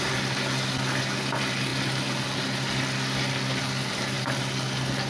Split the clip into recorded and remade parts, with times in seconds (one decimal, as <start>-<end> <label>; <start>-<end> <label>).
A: 0.0-5.1 recorded